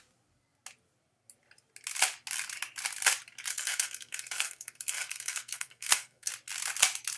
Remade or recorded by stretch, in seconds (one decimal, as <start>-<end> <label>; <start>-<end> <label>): 0.0-3.5 recorded; 3.5-6.3 remade; 6.3-7.2 recorded